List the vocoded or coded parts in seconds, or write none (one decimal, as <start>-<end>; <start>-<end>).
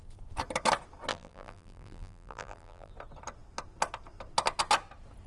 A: 1.1-2.9